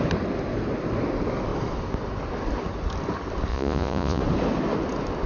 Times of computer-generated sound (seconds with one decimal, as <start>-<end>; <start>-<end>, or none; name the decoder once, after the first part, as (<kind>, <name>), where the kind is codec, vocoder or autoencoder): 3.5-4.2 (vocoder, Vocos)